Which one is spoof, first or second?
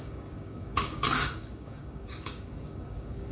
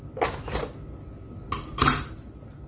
first